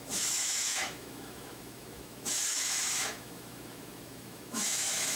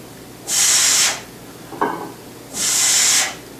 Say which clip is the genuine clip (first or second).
second